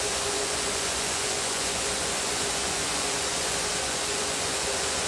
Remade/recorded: remade